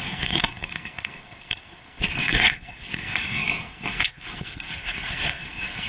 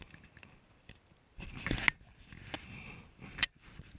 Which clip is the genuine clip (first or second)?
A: second